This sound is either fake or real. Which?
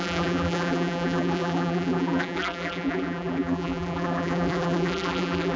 fake